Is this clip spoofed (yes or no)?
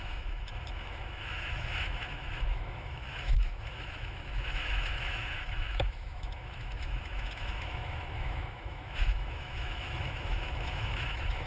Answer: yes